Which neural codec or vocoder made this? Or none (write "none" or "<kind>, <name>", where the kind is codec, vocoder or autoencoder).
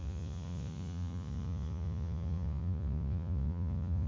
vocoder, Vocos